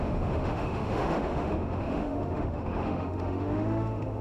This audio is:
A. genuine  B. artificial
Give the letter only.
B